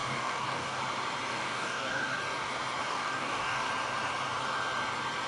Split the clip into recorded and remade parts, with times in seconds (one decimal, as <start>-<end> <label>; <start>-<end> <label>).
0.0-0.8 remade; 0.8-1.3 recorded; 1.3-2.2 remade; 2.2-2.9 recorded; 2.9-3.7 remade; 3.7-5.3 recorded